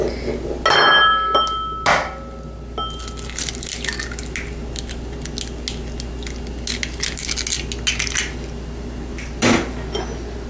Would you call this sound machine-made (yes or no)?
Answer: no